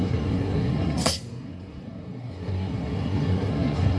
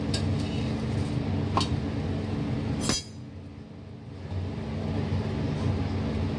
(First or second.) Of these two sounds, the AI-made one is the first